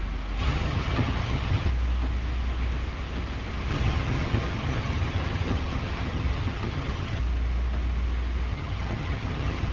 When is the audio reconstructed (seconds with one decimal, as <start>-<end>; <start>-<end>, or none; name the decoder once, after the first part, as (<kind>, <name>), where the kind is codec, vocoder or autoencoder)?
0.4-1.7 (vocoder, HiFi-GAN); 3.7-7.2; 8.5-9.7